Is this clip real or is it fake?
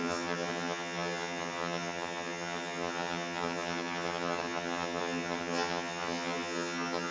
fake